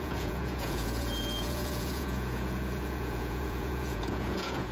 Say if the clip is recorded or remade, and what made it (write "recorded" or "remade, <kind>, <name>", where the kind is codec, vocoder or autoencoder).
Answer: remade, vocoder, Vocos